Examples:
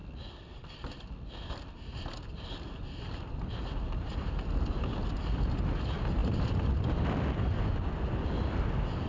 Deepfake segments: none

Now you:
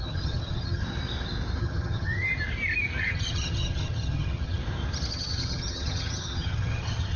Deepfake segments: 0.0-0.8; 1.6-2.3; 3.0-4.6; 5.1-7.2

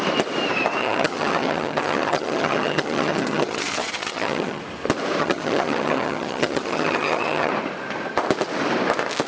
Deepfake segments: 0.8-4.6; 5.2-7.5

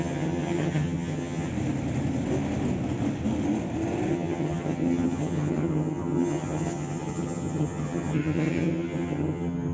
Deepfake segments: 0.0-1.5; 4.1-9.7

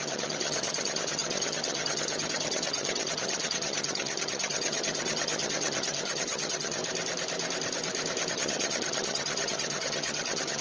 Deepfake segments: 0.0-6.8; 8.3-10.6

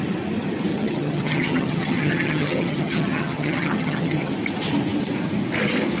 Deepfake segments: 0.7-4.3